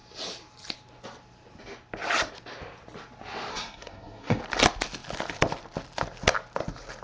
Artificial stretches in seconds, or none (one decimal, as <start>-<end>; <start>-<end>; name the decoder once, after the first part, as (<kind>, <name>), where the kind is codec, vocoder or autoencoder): 3.5-4.4 (codec, SNAC)